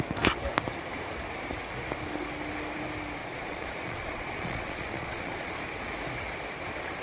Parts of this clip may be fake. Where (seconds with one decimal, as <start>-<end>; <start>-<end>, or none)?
3.2-5.5